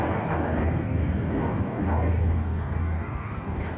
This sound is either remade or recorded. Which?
remade